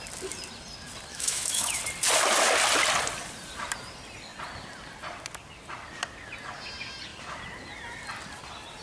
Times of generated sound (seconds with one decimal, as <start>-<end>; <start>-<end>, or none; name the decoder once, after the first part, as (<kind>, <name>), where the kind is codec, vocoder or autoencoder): 1.1-1.8 (autoencoder, DAC-VAE)